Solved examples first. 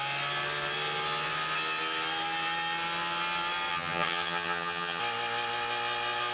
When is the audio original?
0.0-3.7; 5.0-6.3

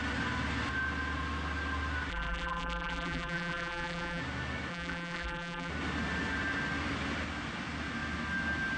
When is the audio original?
0.0-2.1; 4.2-4.7; 5.7-8.8

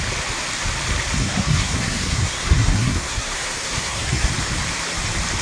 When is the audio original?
0.0-1.2; 4.3-5.4

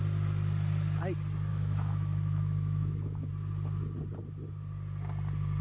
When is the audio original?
0.0-1.5; 3.3-5.6

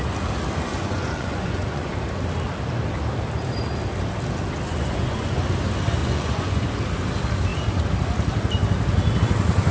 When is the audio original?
0.0-0.7; 1.9-4.7; 5.4-6.0; 6.8-9.7